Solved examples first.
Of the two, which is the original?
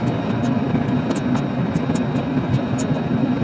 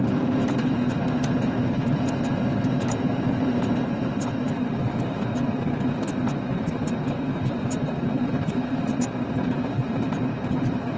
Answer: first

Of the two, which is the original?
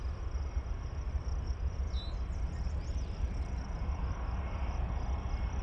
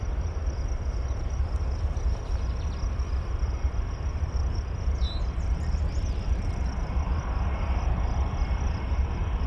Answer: first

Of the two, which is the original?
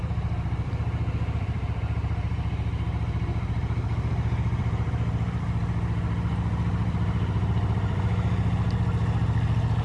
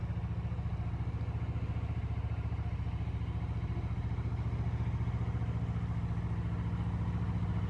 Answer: second